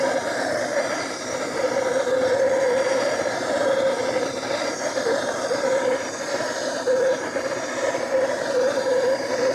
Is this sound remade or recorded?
remade